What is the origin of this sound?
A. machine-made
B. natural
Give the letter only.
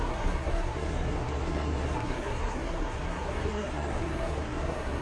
A